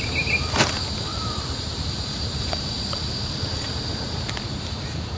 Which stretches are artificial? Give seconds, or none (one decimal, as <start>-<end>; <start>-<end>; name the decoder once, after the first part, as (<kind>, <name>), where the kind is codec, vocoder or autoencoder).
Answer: 1.1-4.2 (vocoder, BigVGAN v2)

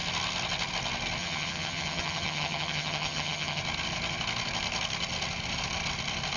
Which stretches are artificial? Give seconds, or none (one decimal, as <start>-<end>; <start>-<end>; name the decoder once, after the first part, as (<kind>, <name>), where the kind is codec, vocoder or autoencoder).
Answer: 1.2-3.6 (vocoder, HiFi-GAN)

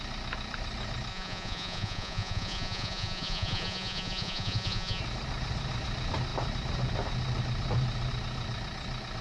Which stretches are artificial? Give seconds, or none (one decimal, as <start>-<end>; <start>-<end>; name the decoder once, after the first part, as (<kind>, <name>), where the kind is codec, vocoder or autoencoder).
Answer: 1.1-5.0 (vocoder, Vocos)

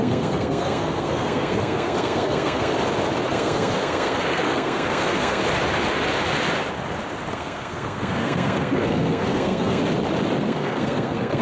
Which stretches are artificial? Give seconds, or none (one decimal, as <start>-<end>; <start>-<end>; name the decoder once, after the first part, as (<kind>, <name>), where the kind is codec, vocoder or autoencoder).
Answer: 0.0-2.7 (codec, SNAC); 3.3-5.4; 7.3-9.8; 10.4-11.4

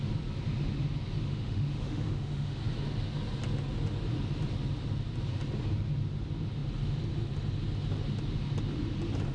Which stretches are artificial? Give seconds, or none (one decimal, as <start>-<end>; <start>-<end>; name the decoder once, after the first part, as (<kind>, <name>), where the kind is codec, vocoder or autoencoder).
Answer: 1.2-2.6 (autoencoder, DAC-VAE)

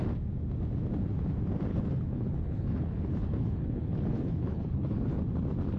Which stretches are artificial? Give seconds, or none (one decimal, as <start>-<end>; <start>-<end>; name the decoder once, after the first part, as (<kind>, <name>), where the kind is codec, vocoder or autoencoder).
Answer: 1.7-5.2 (codec, HILCodec)